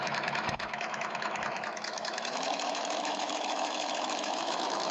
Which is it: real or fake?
fake